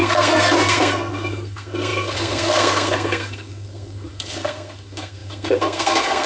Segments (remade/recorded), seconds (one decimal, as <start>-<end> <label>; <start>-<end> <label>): 0.0-6.3 remade